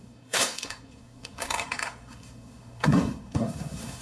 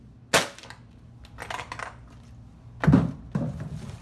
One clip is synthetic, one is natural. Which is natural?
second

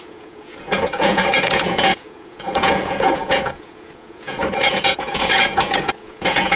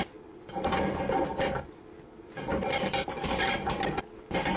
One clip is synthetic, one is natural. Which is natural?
second